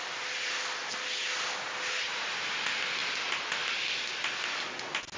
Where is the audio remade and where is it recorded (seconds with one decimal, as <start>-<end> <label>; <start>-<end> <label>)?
0.0-5.2 recorded